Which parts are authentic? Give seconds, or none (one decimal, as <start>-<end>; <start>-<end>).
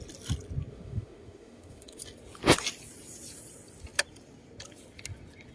0.0-0.7; 2.0-5.5